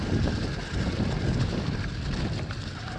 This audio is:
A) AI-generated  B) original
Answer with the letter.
A